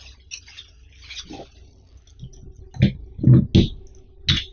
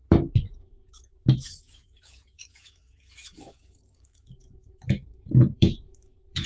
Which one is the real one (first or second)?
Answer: first